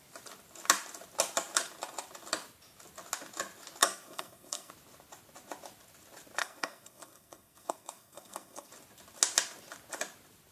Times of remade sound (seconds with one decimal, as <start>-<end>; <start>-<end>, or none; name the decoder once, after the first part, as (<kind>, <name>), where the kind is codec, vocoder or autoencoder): 3.8-4.7 (codec, SNAC); 6.4-8.7